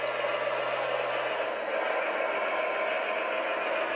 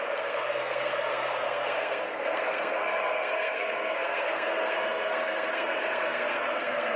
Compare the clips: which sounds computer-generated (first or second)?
second